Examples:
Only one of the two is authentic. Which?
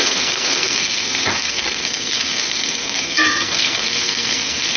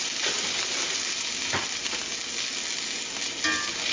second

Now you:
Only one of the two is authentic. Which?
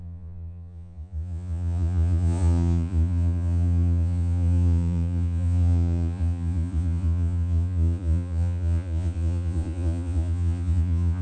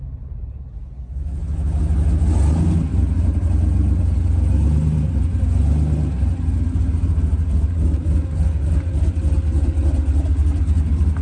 second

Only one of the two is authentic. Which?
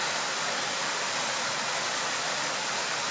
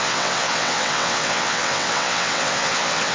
first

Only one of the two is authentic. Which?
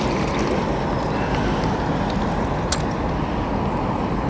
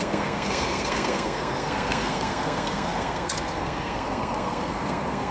first